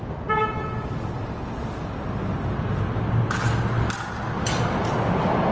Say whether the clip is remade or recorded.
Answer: recorded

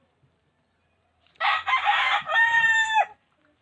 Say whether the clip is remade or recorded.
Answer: remade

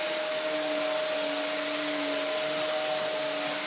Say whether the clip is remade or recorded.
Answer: recorded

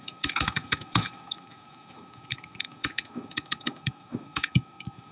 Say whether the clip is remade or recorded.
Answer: remade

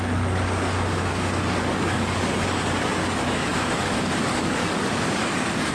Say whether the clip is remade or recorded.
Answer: remade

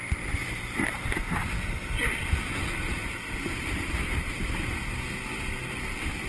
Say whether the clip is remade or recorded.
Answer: recorded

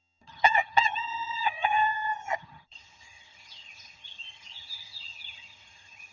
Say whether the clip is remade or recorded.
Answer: remade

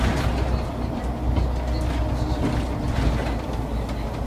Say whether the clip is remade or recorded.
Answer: recorded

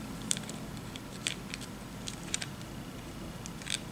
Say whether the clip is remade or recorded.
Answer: remade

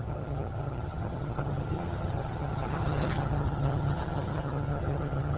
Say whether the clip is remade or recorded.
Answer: remade